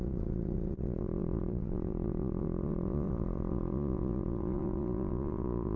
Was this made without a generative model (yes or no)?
no